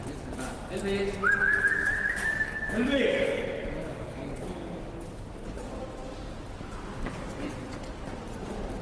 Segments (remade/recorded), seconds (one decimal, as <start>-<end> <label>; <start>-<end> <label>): 0.0-1.2 recorded; 1.2-4.9 remade; 4.9-8.8 recorded